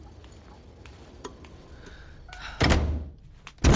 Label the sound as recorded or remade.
recorded